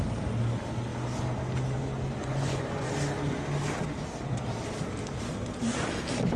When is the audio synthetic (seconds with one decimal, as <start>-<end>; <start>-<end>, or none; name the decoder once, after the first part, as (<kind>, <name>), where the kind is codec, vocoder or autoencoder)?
2.2-2.9 (vocoder, Vocos)